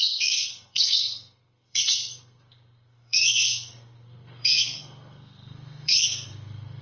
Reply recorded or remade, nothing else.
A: remade